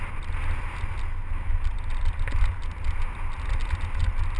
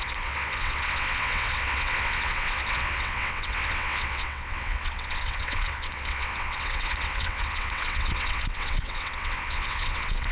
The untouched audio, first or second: first